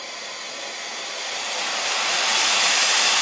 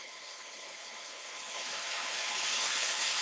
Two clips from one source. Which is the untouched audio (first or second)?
first